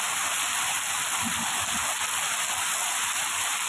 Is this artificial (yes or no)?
no